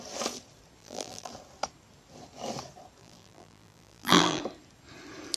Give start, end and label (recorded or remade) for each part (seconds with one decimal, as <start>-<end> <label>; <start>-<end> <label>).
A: 0.0-0.8 recorded; 0.8-1.3 remade; 1.3-3.0 recorded; 3.0-4.4 remade; 4.4-5.4 recorded